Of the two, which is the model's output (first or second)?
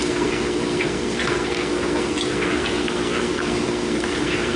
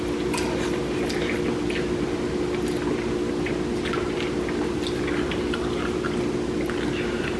first